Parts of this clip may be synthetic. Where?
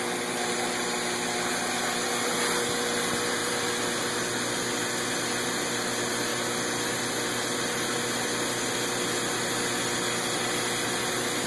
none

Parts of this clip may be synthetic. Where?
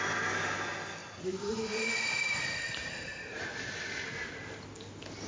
1.0-1.5 (vocoder, BigVGAN v2); 2.2-3.5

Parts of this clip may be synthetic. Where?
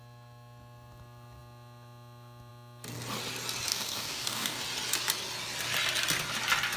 3.7-4.6 (codec, DAC)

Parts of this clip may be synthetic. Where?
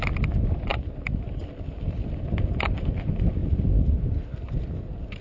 none